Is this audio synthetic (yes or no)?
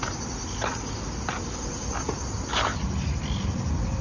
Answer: no